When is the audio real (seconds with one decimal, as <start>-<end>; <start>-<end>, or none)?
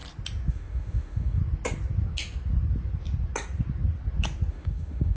0.0-0.5; 1.4-4.5